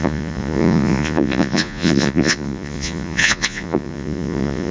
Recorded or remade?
remade